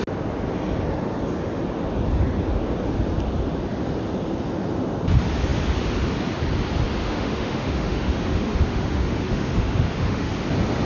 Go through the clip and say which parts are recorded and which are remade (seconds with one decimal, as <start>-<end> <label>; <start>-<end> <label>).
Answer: 0.0-7.0 recorded; 7.0-10.3 remade; 10.3-10.8 recorded